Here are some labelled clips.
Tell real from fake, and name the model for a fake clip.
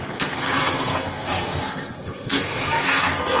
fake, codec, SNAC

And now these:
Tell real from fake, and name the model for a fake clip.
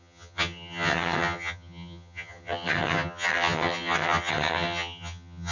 fake, vocoder, HiFi-GAN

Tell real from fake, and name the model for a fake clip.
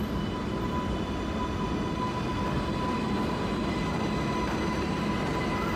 real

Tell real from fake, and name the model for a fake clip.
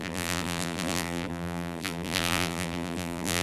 fake, vocoder, BigVGAN v2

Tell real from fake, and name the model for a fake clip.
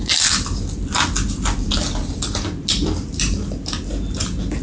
real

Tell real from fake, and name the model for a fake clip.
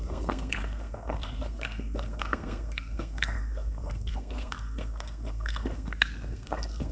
fake, codec, SNAC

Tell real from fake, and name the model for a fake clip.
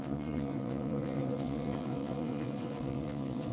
fake, vocoder, WaveNeXt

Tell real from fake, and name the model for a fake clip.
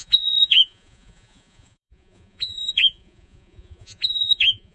fake, vocoder, Vocos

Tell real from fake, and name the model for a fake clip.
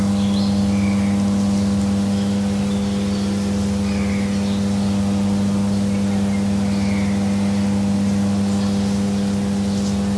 real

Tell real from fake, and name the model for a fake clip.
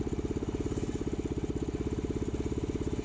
real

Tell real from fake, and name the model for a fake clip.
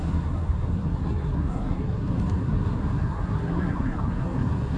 fake, codec, SNAC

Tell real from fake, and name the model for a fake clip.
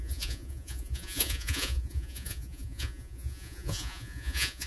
fake, vocoder, Vocos